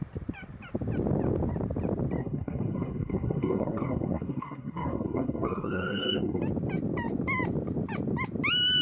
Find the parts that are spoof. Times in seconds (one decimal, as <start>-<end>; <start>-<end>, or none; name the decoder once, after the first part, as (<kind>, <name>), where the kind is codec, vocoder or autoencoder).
2.2-6.4 (codec, SNAC)